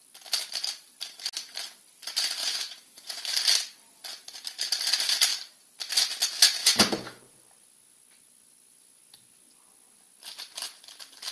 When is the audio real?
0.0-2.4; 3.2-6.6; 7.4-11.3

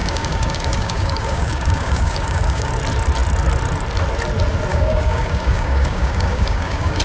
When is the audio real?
2.7-4.7

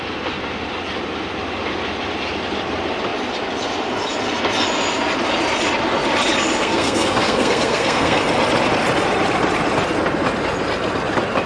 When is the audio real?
0.0-6.6; 8.2-11.5

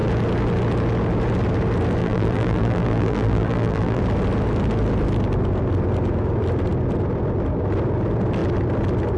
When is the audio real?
0.0-2.0; 4.0-9.2

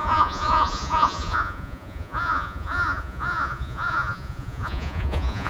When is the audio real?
none